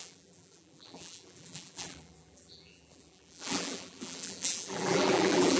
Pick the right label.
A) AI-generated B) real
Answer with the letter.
A